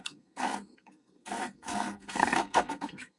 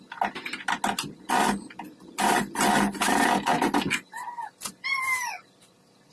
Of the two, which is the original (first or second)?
second